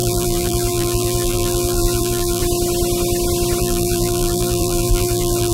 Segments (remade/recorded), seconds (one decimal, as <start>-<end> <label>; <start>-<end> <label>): 0.0-2.4 remade; 2.4-3.6 recorded; 3.6-5.5 remade